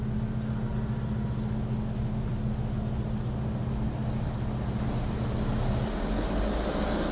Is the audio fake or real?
real